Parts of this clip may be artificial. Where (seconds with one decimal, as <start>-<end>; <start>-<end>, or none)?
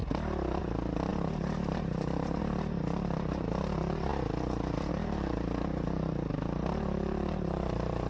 0.6-4.1; 4.9-8.1